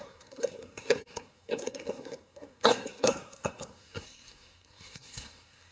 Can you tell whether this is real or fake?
fake